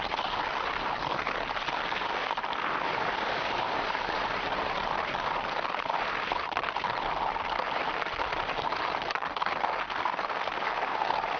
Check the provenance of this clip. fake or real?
real